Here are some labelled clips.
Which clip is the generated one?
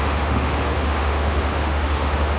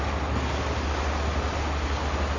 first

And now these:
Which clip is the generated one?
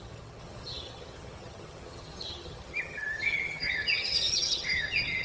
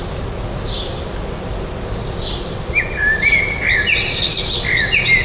first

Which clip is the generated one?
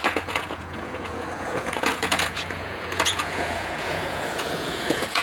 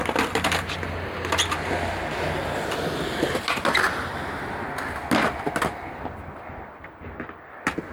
first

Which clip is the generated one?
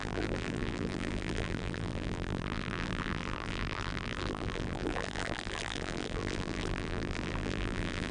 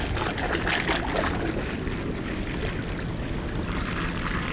first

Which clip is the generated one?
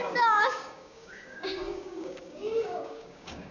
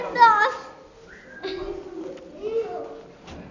first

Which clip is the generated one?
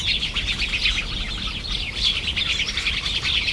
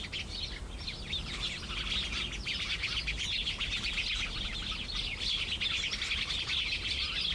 first